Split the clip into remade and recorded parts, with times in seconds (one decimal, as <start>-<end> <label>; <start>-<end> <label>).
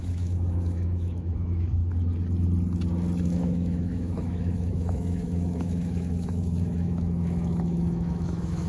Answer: 0.0-1.8 remade; 1.8-3.2 recorded; 3.2-8.7 remade